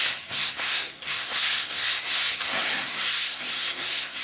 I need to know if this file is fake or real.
fake